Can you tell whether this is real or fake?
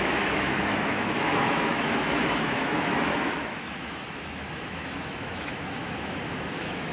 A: fake